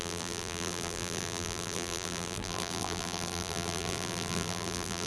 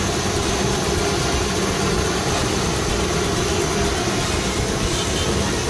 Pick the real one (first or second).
second